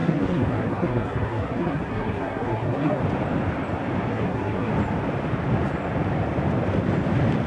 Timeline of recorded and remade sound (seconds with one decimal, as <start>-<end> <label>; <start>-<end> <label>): 0.0-3.0 remade; 3.0-4.1 recorded; 4.1-4.7 remade; 4.7-7.5 recorded